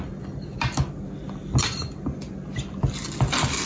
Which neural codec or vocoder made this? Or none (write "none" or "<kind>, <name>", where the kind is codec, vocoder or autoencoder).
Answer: none